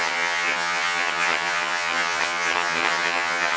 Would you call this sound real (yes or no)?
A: no